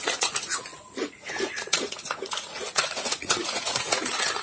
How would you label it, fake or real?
fake